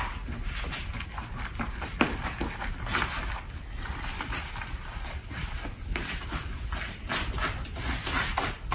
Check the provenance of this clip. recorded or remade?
recorded